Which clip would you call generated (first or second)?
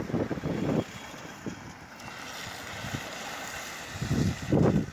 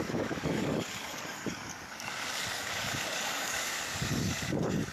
second